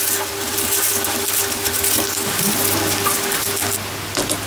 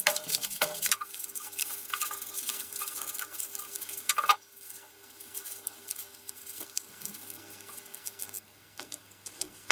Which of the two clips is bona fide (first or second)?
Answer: first